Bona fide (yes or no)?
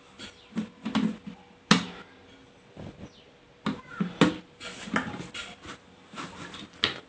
yes